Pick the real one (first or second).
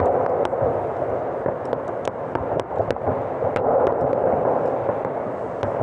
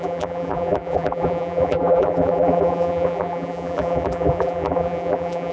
first